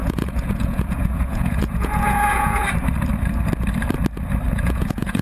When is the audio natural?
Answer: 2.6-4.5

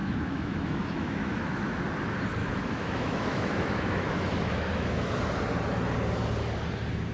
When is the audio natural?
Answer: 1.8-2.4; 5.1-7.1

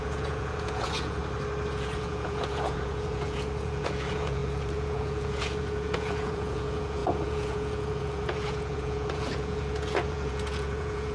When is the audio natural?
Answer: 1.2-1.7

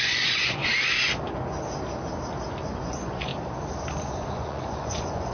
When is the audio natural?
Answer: 0.6-2.5; 3.3-4.0

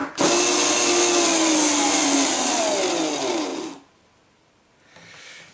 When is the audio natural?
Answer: 0.0-5.5